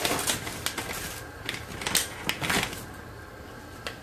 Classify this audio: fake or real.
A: real